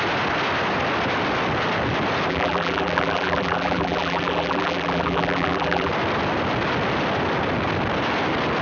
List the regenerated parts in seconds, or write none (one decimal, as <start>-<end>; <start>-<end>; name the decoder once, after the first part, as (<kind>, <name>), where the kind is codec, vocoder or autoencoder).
2.3-5.9 (vocoder, BigVGAN v2)